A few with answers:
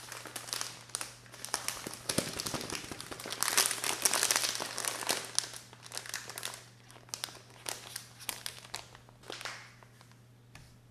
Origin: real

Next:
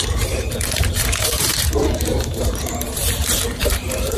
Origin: fake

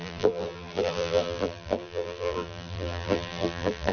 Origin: fake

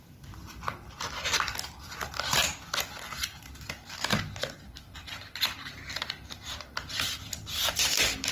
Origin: real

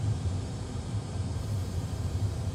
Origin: fake